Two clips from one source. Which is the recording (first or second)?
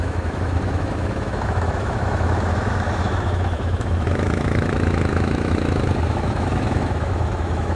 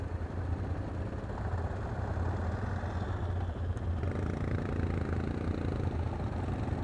second